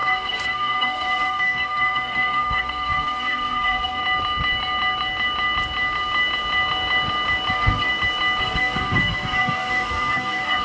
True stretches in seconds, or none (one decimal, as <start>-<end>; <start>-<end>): 4.0-7.5; 7.9-8.4